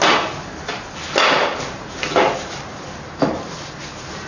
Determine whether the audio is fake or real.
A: real